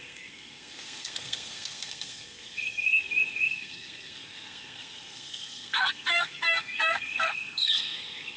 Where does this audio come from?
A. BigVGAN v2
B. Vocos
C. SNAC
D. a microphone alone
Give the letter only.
C